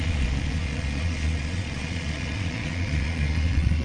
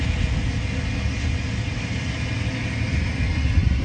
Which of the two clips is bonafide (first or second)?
second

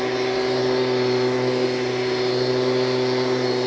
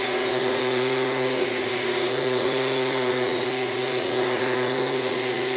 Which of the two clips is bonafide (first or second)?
first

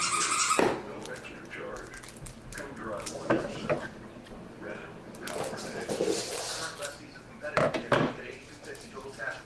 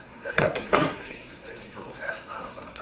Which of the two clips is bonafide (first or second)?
first